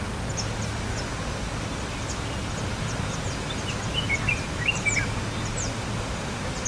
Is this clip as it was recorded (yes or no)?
yes